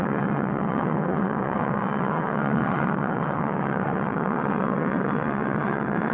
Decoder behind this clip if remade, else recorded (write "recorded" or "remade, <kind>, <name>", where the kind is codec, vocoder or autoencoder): remade, vocoder, WaveNeXt